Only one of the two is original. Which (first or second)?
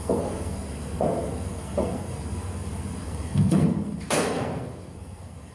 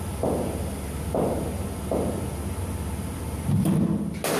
second